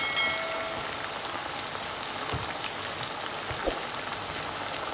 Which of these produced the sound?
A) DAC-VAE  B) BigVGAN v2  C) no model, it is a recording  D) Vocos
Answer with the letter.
C